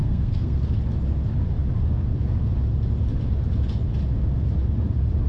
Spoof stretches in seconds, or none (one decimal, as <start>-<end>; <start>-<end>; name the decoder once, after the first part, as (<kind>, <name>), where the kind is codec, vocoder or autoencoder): 0.0-0.6 (codec, SNAC)